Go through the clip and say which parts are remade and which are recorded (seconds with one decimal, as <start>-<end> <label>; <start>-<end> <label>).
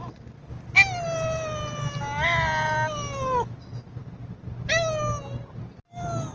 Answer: 0.0-6.3 recorded